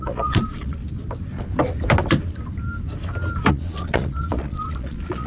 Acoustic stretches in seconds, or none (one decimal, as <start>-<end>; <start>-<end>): 0.8-3.5